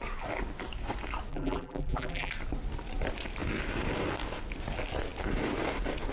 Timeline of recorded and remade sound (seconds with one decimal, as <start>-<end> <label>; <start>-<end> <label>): 0.0-1.3 recorded; 1.3-2.3 remade; 2.3-6.1 recorded